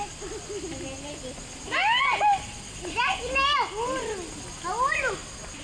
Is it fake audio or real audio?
real